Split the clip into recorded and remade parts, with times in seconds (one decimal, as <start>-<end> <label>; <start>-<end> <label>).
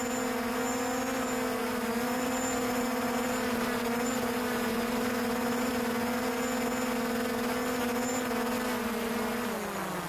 0.0-1.6 recorded; 1.6-5.9 remade; 5.9-10.1 recorded